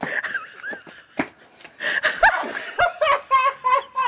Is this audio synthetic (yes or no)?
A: no